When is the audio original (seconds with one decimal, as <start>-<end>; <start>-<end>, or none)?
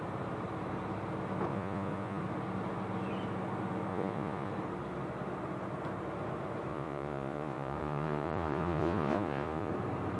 0.0-1.5; 2.2-3.9; 4.5-6.7; 9.7-10.2